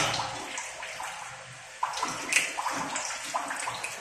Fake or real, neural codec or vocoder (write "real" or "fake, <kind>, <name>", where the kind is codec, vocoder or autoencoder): real